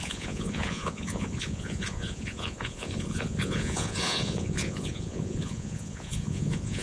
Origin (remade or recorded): remade